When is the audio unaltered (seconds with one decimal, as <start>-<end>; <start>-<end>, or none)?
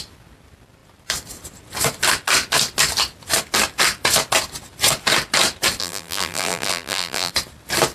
0.0-5.8; 7.3-7.9